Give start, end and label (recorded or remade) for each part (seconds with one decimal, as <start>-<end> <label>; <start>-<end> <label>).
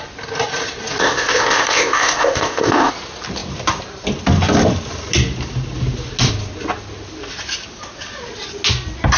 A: 0.0-1.0 recorded; 1.0-2.9 remade; 2.9-9.2 recorded